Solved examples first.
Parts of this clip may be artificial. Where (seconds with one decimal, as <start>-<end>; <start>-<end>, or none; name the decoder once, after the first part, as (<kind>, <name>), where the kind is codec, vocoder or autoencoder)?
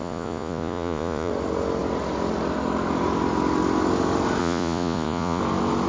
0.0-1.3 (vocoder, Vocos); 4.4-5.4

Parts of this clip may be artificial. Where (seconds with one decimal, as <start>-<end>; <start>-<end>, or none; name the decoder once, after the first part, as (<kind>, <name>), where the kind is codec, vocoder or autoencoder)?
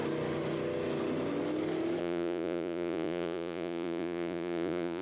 2.0-5.0 (vocoder, Vocos)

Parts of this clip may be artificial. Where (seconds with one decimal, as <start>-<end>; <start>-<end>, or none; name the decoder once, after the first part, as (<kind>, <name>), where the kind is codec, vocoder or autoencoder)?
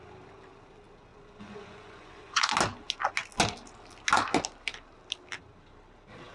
1.1-2.5 (vocoder, Vocos)